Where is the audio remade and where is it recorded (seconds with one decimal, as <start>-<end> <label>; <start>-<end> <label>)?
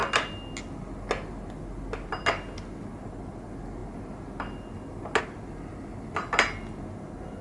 0.0-7.4 recorded